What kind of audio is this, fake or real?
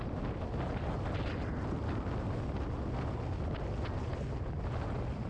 real